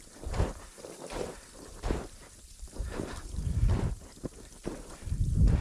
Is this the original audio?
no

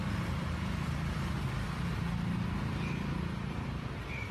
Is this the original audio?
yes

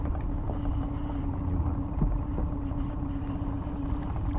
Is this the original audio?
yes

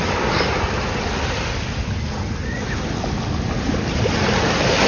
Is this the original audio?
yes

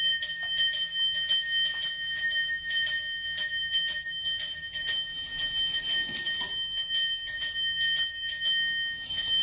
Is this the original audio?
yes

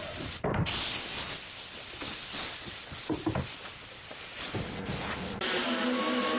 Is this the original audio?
yes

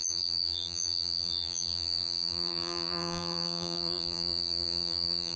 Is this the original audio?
no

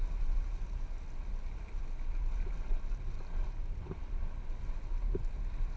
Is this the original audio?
yes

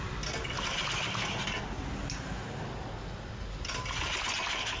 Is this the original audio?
yes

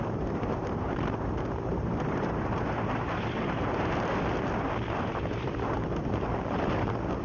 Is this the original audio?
no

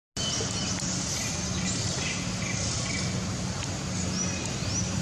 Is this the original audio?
yes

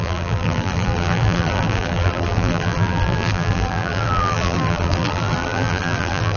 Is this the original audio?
no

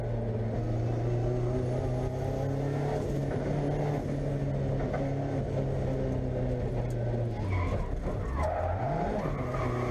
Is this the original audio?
yes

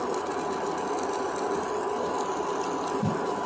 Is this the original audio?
yes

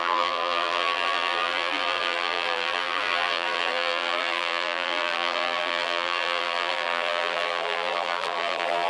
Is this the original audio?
no